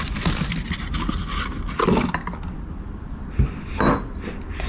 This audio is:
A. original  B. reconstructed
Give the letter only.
A